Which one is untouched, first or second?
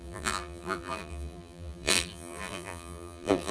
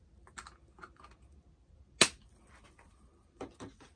second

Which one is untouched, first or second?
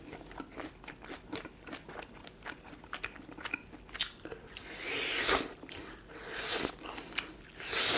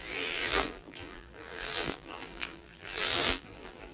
first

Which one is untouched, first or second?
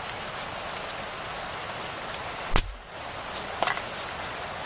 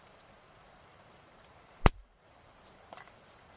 first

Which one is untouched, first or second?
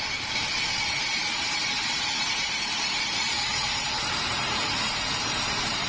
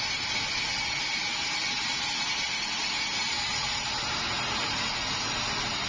second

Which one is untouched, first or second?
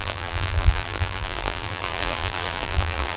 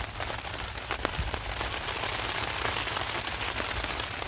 second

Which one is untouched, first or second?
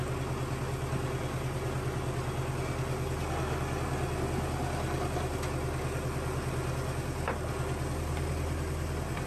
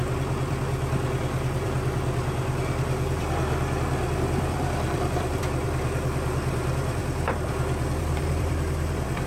first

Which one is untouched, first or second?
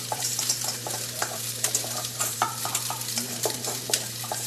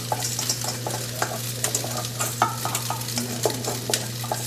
second